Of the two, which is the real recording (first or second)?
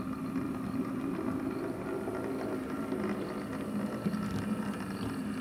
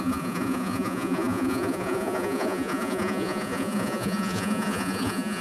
first